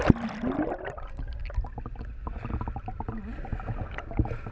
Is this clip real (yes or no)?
yes